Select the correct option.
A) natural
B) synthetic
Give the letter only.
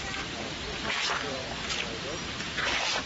A